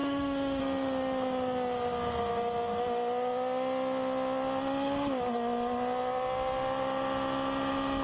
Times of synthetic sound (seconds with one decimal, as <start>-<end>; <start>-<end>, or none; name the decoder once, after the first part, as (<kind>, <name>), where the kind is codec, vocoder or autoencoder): 0.0-0.6 (autoencoder, DAC-VAE)

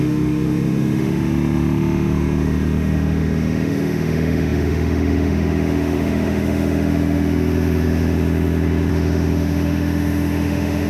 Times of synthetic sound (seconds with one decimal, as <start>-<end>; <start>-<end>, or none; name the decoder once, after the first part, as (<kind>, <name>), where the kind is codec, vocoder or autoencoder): 0.0-10.9 (autoencoder, DAC-VAE)

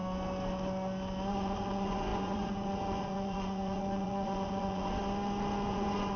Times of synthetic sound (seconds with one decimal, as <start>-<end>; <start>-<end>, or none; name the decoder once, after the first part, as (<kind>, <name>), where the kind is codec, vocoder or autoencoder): 1.3-5.0 (vocoder, Vocos); 5.7-6.2

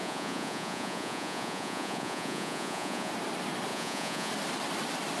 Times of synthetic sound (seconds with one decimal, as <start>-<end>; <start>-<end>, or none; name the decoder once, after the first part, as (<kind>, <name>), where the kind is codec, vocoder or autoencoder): 0.0-3.1 (vocoder, Vocos); 3.7-4.3